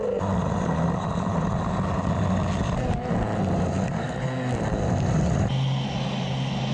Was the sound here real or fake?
real